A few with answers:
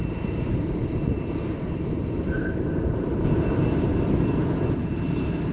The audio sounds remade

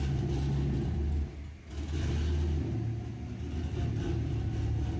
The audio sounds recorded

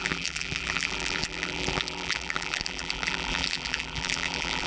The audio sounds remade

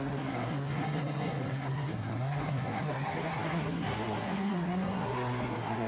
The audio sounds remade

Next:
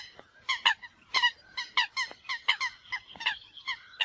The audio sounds recorded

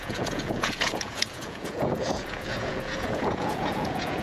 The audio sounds remade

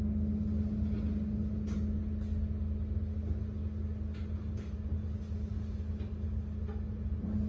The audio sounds recorded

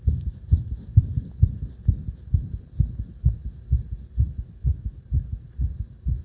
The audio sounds recorded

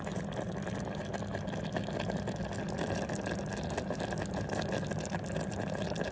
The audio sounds recorded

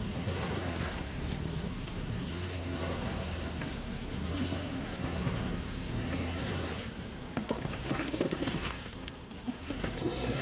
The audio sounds remade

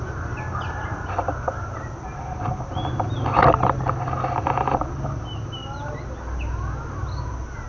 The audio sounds recorded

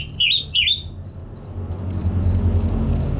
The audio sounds recorded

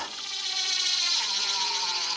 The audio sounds remade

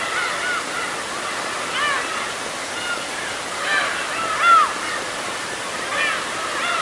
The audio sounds recorded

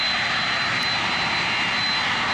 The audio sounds recorded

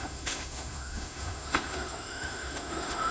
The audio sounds remade